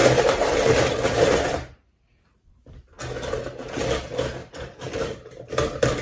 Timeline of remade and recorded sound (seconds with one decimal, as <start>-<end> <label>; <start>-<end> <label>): 0.0-2.5 remade; 2.5-4.4 recorded; 4.4-5.5 remade; 5.5-6.0 recorded

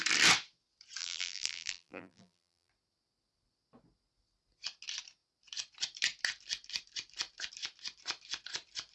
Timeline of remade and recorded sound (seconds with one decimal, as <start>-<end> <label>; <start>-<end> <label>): 0.0-1.0 recorded; 1.0-2.7 remade; 2.7-8.9 recorded